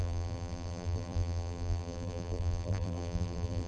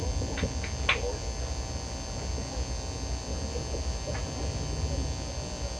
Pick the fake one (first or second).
first